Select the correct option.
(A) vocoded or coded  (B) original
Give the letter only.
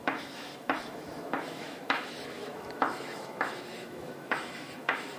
A